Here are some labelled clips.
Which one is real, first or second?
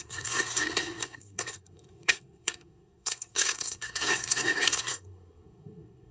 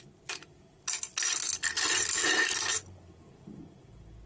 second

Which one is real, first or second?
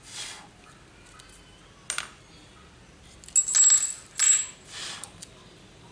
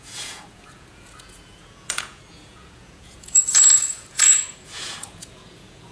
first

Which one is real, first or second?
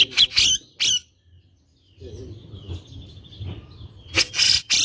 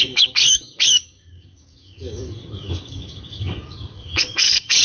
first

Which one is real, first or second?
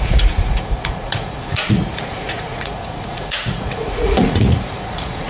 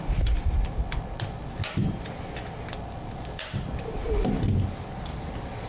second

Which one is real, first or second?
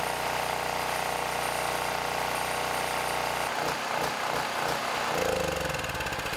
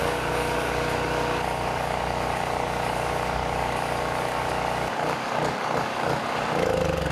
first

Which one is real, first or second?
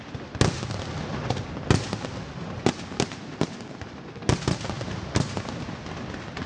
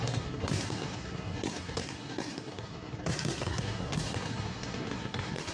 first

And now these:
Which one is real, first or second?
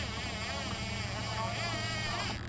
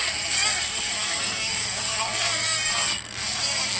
first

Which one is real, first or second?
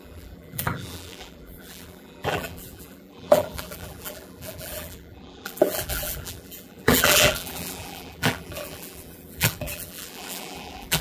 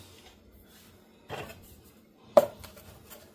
second